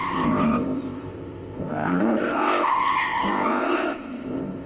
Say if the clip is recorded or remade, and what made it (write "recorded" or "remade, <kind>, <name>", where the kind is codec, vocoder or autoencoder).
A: remade, codec, ZipCodec